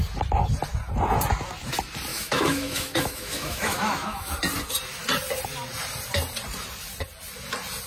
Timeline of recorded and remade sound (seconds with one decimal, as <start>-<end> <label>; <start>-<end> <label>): 0.0-2.1 recorded; 2.1-4.3 remade; 4.3-7.9 recorded